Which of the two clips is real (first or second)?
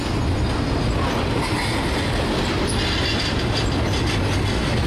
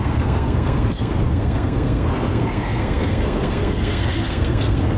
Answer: first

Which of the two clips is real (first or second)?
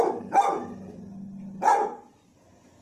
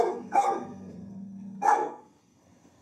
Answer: first